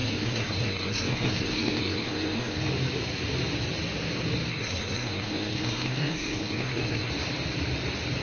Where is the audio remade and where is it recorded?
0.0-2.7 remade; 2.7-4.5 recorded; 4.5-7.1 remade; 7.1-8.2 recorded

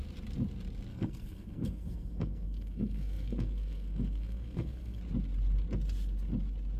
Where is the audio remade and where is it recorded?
0.0-0.9 recorded; 0.9-5.0 remade; 5.0-6.8 recorded

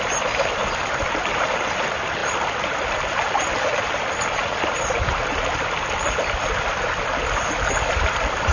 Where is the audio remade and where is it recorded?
0.0-8.5 recorded

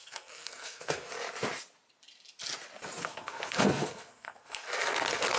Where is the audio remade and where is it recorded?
0.0-1.1 remade; 1.1-3.0 recorded; 3.0-5.4 remade

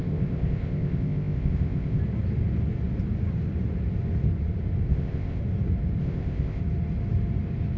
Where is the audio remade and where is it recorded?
0.0-2.0 remade; 2.0-4.9 recorded; 4.9-5.4 remade; 5.4-6.0 recorded; 6.0-6.6 remade; 6.6-7.8 recorded

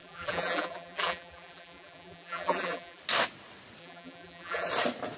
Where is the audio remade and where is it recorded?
0.0-3.0 remade; 3.0-3.8 recorded; 3.8-4.7 remade; 4.7-5.2 recorded